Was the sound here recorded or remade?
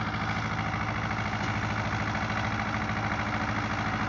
recorded